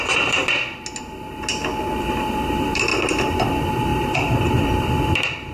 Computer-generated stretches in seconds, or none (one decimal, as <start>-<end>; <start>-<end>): 0.0-0.4; 2.0-2.9; 3.4-5.5